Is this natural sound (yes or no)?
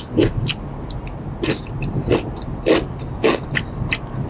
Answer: yes